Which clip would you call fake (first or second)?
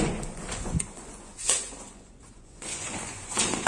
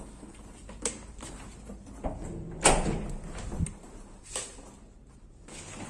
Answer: first